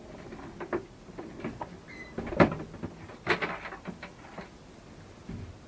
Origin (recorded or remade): recorded